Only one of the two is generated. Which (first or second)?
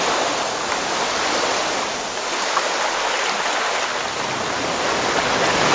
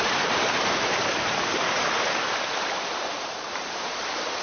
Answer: second